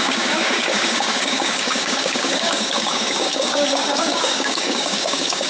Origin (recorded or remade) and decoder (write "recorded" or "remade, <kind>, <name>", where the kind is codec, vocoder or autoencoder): remade, codec, DAC